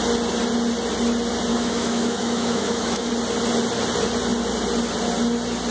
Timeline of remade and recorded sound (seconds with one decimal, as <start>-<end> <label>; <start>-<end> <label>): 0.0-1.5 recorded; 1.5-3.1 remade; 3.1-5.7 recorded